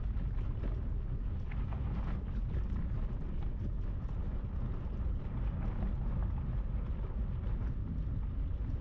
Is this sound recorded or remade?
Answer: recorded